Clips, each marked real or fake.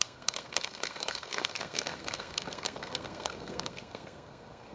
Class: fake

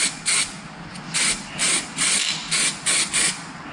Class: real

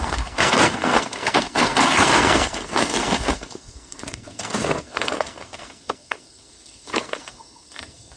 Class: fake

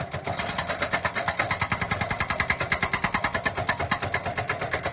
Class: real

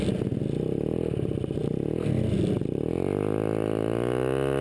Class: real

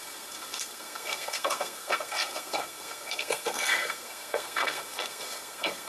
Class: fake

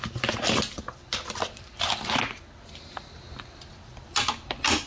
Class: real